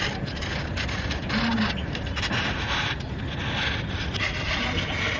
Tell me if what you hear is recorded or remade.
recorded